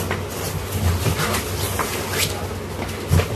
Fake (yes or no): no